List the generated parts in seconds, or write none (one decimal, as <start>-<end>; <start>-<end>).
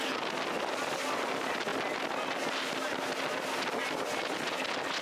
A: none